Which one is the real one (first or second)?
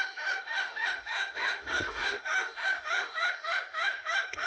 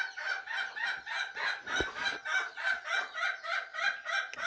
second